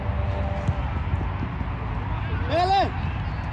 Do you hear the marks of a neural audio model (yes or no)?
no